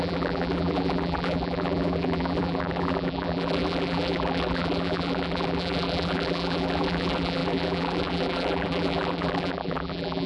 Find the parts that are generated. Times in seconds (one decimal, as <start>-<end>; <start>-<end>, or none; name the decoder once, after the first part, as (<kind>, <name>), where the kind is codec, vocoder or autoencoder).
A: 0.0-10.3 (vocoder, BigVGAN v2)